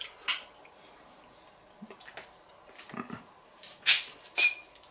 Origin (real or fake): real